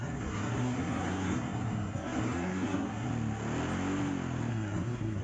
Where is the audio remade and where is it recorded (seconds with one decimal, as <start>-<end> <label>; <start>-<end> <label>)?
0.0-3.1 remade; 3.1-4.5 recorded; 4.5-5.2 remade